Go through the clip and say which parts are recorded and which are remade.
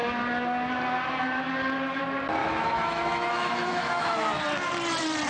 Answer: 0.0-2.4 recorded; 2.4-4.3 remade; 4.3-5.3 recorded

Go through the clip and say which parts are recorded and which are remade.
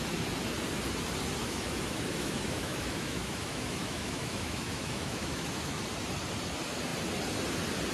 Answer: 0.0-1.4 recorded; 1.4-5.8 remade; 5.8-7.9 recorded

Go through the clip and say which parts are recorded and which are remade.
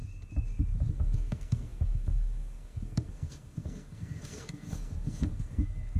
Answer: 0.0-0.9 recorded; 0.9-6.0 remade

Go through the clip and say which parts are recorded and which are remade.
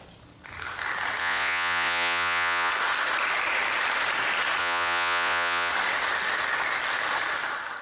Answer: 0.0-1.2 recorded; 1.2-2.7 remade; 2.7-4.6 recorded; 4.6-5.7 remade; 5.7-7.8 recorded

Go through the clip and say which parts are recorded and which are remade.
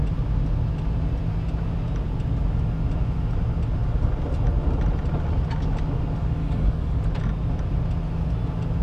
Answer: 0.0-6.4 recorded; 6.4-7.0 remade; 7.0-8.8 recorded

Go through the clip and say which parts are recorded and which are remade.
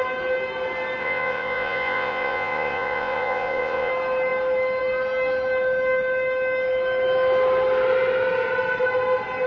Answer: 0.0-1.0 recorded; 1.0-3.9 remade; 3.9-9.5 recorded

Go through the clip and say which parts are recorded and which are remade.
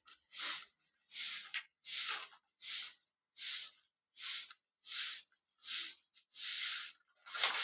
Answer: 0.0-7.6 recorded